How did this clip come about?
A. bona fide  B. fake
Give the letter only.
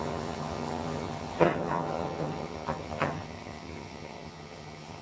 B